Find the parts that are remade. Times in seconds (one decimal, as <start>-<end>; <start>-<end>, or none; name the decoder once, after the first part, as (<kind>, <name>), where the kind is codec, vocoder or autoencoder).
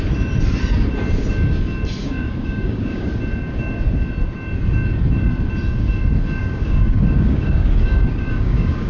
2.0-3.1 (codec, DAC); 6.4-8.9